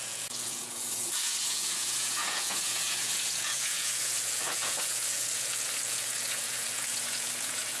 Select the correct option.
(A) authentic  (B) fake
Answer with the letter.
B